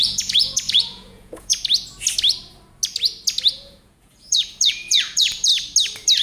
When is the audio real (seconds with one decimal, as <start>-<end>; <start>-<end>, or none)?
1.5-3.5; 5.5-6.2